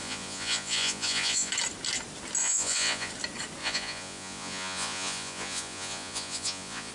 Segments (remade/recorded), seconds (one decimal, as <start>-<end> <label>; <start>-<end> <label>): 0.0-1.5 remade; 1.5-2.4 recorded; 2.4-3.1 remade; 3.1-3.6 recorded; 3.6-6.9 remade